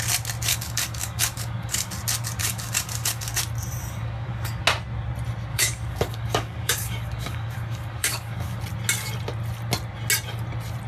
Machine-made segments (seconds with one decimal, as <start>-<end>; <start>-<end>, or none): 0.5-1.9; 2.4-3.4; 3.8-4.6; 5.5-8.6